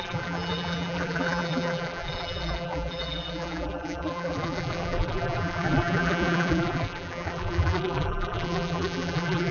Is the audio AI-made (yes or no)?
yes